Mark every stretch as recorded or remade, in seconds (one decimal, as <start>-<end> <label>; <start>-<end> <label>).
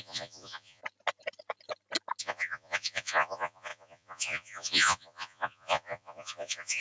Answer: 0.0-0.8 remade; 0.8-2.2 recorded; 2.2-6.8 remade